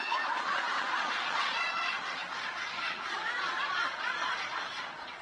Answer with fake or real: fake